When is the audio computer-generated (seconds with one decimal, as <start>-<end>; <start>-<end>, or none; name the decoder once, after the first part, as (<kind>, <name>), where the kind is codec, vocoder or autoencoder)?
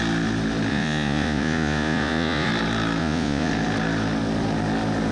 0.7-2.5 (vocoder, Vocos); 3.0-3.5